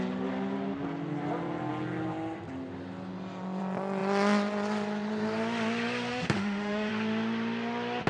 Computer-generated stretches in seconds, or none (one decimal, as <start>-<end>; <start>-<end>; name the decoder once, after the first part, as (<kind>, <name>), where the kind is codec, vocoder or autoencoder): 6.1-6.9 (autoencoder, DAC-VAE)